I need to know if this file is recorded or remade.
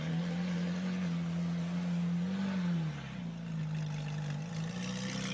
recorded